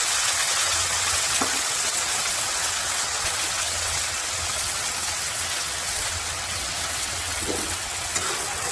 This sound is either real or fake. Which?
fake